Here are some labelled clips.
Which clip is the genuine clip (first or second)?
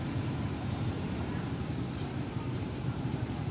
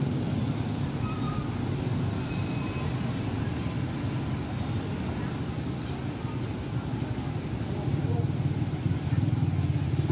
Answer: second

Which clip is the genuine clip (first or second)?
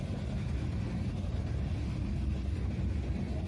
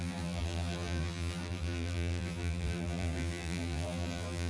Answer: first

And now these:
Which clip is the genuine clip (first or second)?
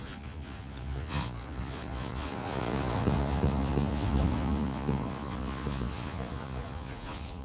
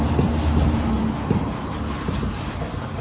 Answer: second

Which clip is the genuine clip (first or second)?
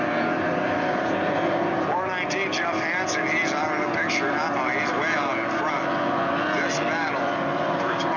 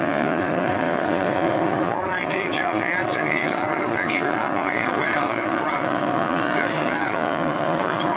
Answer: first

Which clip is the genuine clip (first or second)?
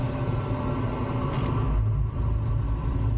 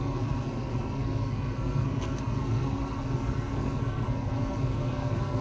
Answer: first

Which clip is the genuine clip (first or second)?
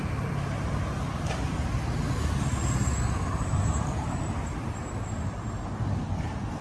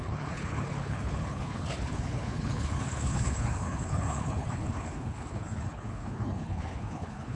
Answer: first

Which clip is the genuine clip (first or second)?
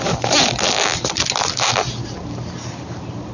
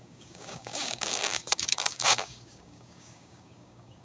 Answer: first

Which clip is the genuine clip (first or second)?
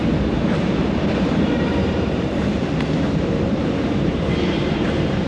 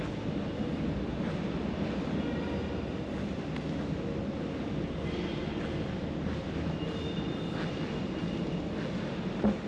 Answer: second